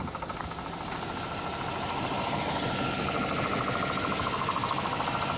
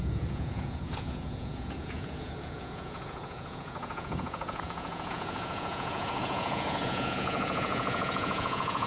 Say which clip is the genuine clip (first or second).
first